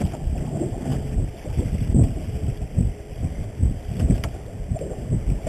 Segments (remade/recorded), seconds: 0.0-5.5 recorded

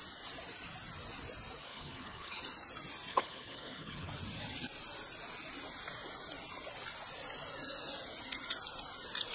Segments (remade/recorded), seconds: 0.0-1.7 recorded; 1.7-2.4 remade; 2.4-3.1 recorded; 3.1-4.1 remade; 4.1-9.3 recorded